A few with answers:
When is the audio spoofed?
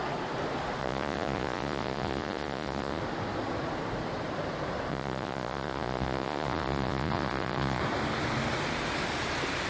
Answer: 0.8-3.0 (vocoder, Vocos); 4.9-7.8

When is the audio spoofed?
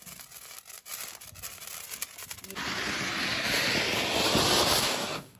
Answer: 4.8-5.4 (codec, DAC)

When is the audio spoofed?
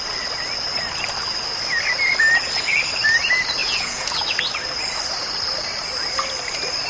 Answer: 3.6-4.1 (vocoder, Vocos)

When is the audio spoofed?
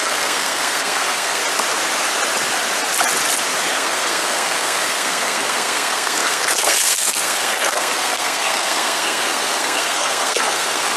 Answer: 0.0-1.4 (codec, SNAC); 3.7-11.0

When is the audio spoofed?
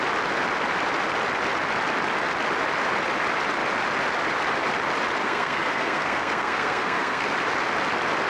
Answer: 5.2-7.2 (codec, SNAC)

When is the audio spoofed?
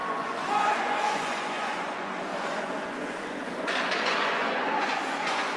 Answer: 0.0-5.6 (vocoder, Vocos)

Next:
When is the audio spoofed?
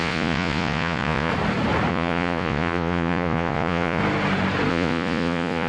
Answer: 0.0-1.3 (vocoder, Vocos); 1.9-4.0; 4.7-5.7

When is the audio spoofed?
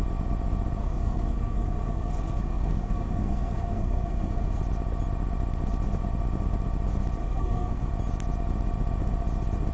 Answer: 0.8-4.6 (codec, SNAC); 7.2-7.9